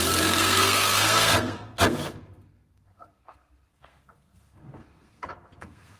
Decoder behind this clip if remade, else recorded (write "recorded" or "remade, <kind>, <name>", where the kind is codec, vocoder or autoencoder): remade, codec, SNAC